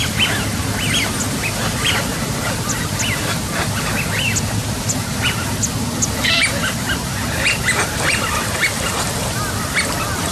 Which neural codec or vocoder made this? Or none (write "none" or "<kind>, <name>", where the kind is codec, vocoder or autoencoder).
none